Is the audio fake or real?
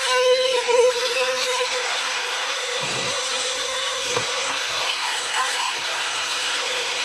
fake